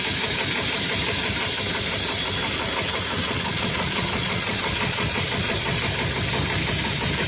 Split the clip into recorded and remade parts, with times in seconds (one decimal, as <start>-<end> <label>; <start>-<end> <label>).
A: 0.0-3.2 recorded; 3.2-5.8 remade; 5.8-7.3 recorded